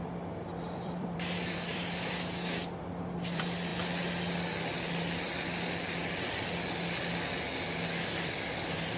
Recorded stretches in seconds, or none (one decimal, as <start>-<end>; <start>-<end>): 3.7-8.3